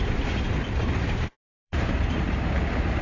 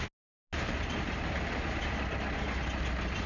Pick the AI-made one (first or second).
first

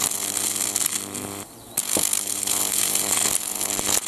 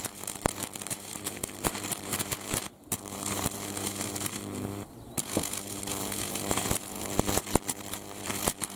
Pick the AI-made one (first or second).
second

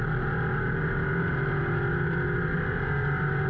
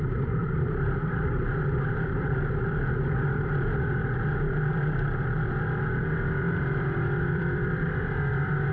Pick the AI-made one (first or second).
second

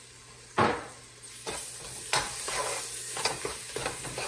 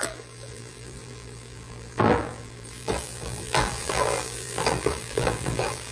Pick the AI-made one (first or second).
second